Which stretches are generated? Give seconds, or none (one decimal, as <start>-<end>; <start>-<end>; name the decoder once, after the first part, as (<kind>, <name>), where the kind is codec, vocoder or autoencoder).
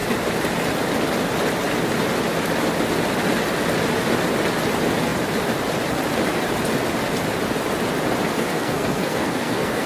8.3-9.9 (codec, SNAC)